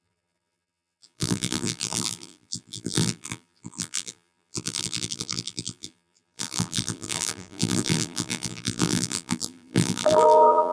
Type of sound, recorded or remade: remade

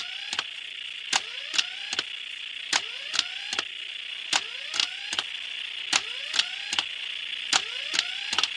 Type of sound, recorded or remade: recorded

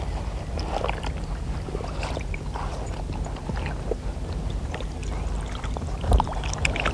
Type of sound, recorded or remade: recorded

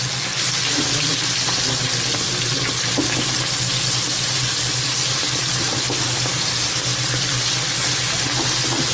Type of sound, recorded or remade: recorded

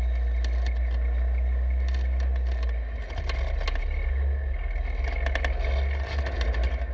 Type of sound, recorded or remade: recorded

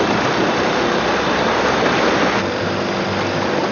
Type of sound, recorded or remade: remade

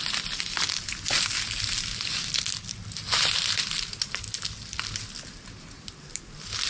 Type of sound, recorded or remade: recorded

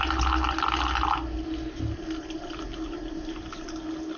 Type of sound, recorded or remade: recorded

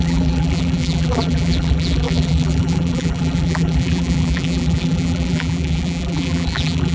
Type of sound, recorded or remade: remade